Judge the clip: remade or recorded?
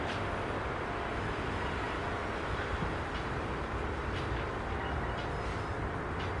recorded